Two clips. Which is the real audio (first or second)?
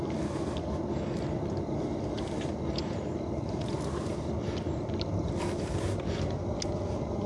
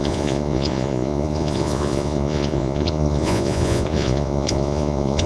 first